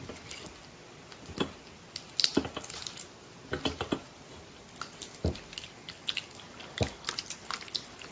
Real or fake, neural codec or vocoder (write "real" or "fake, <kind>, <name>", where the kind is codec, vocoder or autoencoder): real